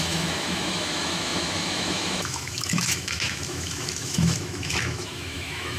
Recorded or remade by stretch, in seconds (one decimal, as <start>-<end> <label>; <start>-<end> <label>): 0.0-5.8 remade